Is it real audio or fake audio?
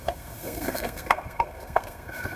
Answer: fake